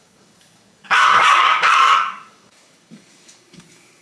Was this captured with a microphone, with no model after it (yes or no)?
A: no